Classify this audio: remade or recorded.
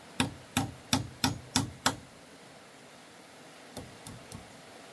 recorded